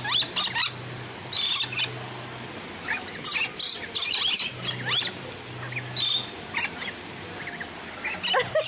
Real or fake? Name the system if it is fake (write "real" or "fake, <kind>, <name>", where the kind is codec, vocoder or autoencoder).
real